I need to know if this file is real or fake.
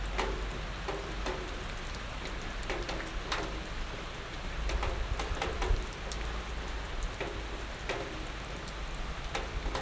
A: real